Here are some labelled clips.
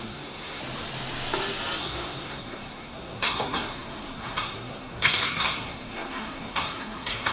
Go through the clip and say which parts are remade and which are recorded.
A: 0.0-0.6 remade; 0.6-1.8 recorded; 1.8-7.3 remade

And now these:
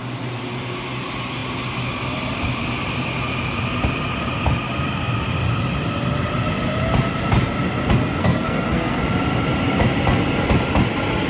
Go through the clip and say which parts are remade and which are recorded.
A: 0.0-8.2 recorded; 8.2-9.0 remade; 9.0-11.3 recorded

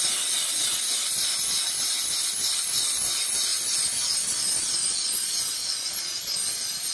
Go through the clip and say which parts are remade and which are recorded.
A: 0.0-6.9 recorded

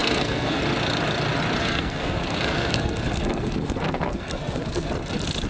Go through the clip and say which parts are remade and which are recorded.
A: 0.0-0.6 remade; 0.6-1.6 recorded; 1.6-4.9 remade; 4.9-5.5 recorded

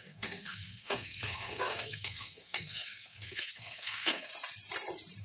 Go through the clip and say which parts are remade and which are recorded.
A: 0.0-4.3 remade; 4.3-5.2 recorded

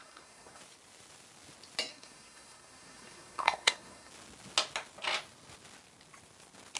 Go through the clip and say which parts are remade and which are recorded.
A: 0.0-0.6 remade; 0.6-1.9 recorded; 1.9-4.1 remade; 4.1-6.8 recorded